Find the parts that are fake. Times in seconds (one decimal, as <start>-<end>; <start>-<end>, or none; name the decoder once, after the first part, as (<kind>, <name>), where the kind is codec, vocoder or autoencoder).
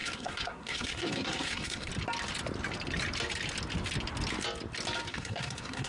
0.0-1.9 (codec, SNAC); 5.1-5.9